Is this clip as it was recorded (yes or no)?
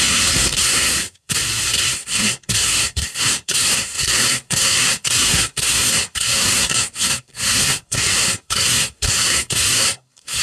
no